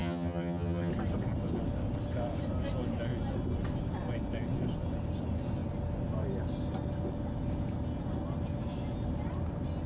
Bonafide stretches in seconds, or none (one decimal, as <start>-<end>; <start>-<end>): 0.9-9.9